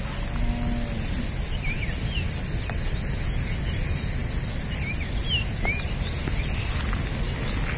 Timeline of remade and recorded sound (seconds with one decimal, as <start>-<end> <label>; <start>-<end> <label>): 0.0-7.8 recorded